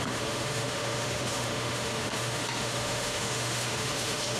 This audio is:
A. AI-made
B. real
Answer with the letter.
A